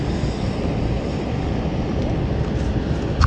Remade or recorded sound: recorded